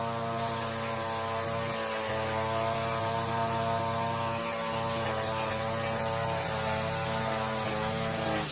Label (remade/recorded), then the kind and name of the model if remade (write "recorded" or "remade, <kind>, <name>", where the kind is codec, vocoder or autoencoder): recorded